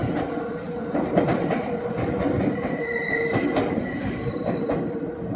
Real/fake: fake